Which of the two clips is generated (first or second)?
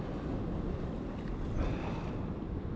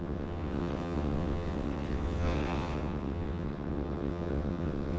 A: second